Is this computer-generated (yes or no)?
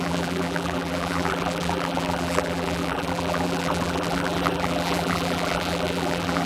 yes